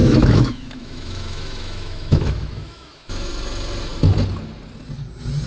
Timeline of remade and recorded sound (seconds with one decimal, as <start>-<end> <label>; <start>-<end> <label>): 0.0-3.3 remade; 3.3-5.5 recorded